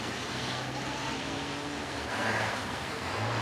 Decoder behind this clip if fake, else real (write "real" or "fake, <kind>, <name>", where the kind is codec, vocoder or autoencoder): fake, codec, SNAC